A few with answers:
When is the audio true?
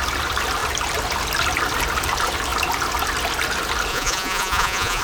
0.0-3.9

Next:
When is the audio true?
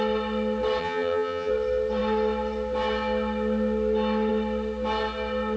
0.0-0.8; 1.5-5.6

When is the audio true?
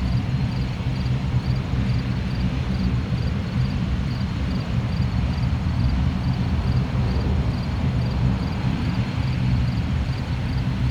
0.9-2.8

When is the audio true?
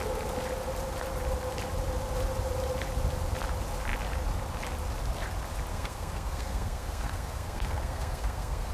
0.0-5.7